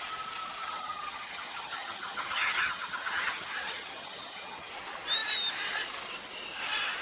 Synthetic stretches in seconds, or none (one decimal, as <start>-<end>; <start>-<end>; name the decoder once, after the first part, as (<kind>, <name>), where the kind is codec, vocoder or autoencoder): 0.6-4.7 (vocoder, HiFi-GAN)